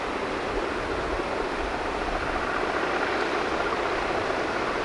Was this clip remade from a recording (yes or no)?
no